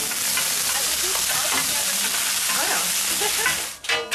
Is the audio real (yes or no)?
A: yes